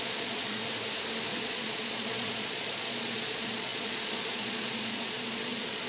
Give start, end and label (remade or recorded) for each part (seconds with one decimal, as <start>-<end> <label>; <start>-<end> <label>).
0.0-0.6 remade; 0.6-1.3 recorded; 1.3-5.9 remade